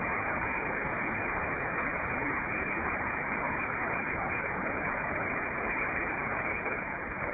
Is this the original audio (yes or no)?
no